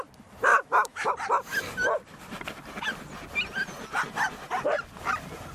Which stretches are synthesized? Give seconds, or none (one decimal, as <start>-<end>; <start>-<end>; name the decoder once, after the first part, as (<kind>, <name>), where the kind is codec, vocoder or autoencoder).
0.5-1.1 (autoencoder, DAC-VAE)